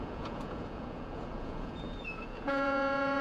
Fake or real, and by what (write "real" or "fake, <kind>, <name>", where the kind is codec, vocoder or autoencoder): fake, vocoder, Vocos